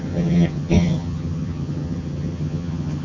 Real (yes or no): no